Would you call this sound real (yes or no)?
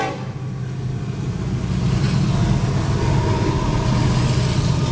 yes